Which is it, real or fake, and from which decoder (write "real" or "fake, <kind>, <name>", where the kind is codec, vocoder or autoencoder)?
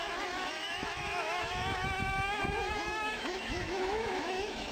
fake, autoencoder, DAC-VAE